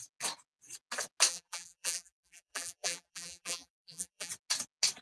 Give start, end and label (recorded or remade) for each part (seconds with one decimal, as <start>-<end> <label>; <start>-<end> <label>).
0.0-1.3 recorded; 1.3-4.3 remade; 4.3-5.0 recorded

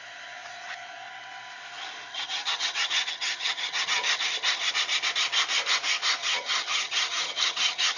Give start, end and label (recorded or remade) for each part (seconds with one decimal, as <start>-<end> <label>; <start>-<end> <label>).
0.0-2.1 recorded; 2.1-4.7 remade; 4.7-6.2 recorded; 6.2-8.0 remade

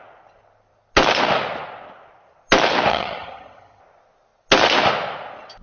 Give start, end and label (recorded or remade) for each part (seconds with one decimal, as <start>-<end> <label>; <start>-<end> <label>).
0.0-2.9 recorded; 2.9-3.8 remade; 3.8-5.6 recorded